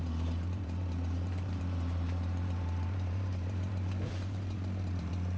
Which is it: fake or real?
fake